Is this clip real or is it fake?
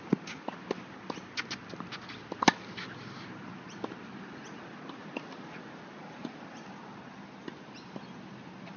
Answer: real